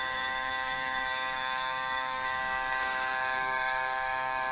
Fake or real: fake